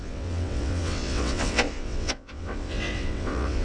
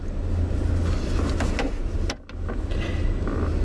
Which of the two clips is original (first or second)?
second